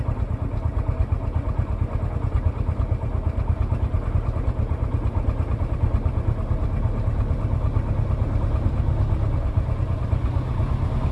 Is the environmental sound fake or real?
real